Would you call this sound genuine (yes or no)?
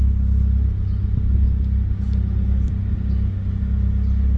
yes